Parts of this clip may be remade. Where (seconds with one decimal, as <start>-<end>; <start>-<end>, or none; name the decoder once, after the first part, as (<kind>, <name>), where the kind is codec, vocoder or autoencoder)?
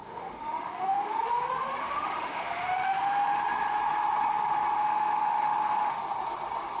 0.0-1.2 (autoencoder, DAC-VAE); 1.8-3.4; 4.8-6.0